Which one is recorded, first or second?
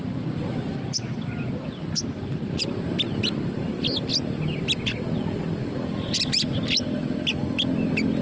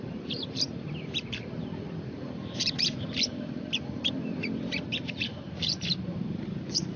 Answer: first